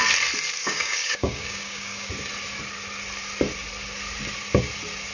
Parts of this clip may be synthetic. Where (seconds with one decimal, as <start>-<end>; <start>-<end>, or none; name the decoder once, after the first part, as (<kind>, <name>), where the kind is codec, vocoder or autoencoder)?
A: 0.6-2.1 (codec, DAC)